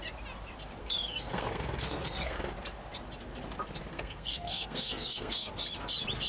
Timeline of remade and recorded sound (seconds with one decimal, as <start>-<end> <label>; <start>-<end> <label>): 0.0-0.8 recorded; 0.8-2.5 remade; 2.5-3.9 recorded; 3.9-5.5 remade; 5.5-6.3 recorded